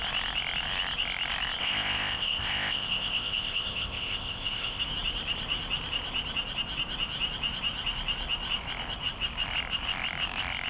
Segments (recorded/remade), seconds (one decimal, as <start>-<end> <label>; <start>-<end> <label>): 0.0-1.6 recorded; 1.6-4.8 remade; 4.8-10.7 recorded